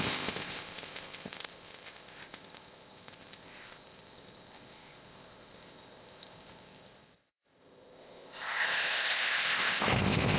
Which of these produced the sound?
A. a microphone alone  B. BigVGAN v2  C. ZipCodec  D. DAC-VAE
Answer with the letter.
C